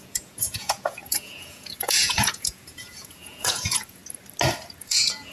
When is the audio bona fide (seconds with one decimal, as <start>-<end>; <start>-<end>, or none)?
4.0-4.8